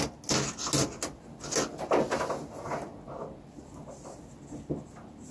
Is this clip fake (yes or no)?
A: no